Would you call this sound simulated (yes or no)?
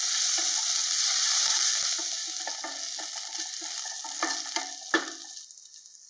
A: no